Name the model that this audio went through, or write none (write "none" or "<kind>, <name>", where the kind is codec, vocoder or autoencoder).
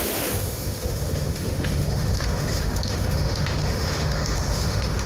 autoencoder, DAC-VAE